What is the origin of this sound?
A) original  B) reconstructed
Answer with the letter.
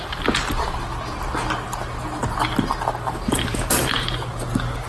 A